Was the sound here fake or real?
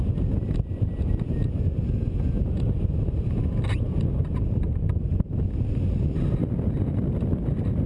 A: real